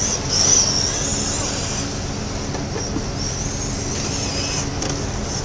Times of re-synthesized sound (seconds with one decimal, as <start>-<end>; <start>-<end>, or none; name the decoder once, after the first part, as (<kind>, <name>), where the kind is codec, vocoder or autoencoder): none